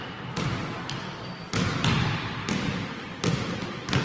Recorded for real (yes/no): yes